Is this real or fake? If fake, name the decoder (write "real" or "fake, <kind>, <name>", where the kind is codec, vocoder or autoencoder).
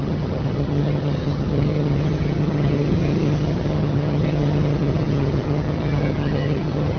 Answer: fake, vocoder, HiFi-GAN